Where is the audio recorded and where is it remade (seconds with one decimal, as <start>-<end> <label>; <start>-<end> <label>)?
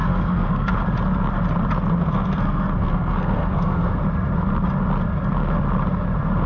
0.0-0.7 remade; 0.7-2.0 recorded; 2.0-4.0 remade; 4.0-6.5 recorded